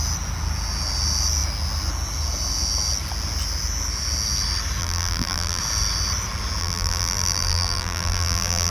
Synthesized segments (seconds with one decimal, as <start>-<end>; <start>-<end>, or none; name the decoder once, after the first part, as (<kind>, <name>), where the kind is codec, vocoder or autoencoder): 4.8-5.6 (vocoder, BigVGAN v2); 6.6-8.7